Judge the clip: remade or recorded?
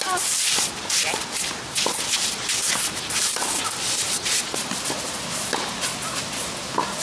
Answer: recorded